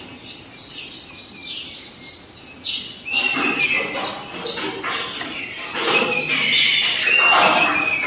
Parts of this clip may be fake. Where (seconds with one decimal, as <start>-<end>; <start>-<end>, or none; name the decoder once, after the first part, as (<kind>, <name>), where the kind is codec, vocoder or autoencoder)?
none